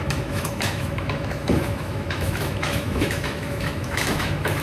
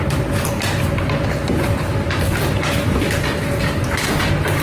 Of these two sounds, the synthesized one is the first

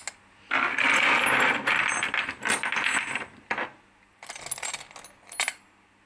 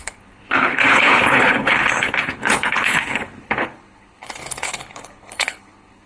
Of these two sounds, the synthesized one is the second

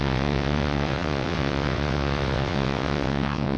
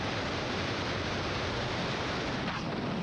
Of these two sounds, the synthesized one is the first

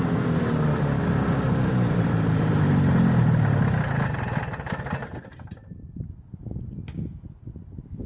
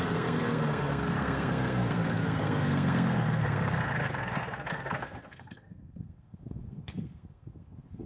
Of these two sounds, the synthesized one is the second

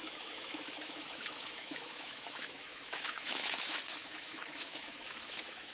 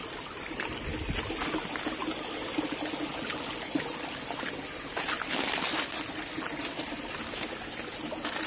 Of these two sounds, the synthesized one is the first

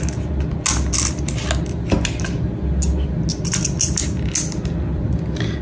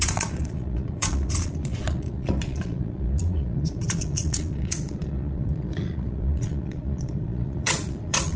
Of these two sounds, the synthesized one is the second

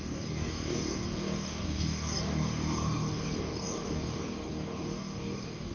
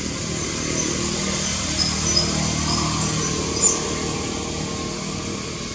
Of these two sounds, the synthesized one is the first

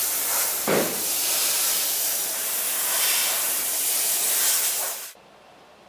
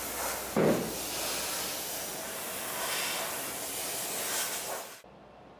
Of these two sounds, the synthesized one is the first